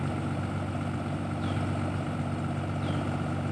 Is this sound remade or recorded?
recorded